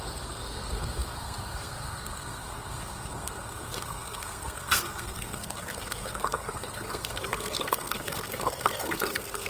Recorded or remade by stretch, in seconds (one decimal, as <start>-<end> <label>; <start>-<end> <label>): 0.0-9.5 remade